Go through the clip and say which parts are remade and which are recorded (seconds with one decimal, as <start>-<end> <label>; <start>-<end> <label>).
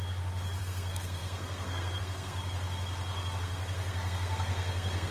0.0-0.6 recorded; 0.6-2.4 remade; 2.4-3.4 recorded; 3.4-5.1 remade